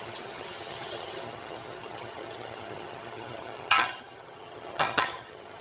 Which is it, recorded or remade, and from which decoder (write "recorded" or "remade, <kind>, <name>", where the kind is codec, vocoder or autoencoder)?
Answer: remade, vocoder, HiFi-GAN